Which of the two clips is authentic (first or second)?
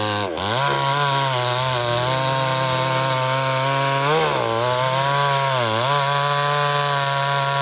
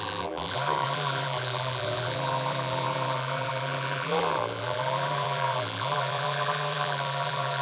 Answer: first